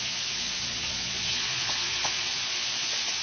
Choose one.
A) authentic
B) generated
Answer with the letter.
B